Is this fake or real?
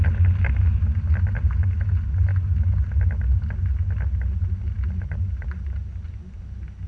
real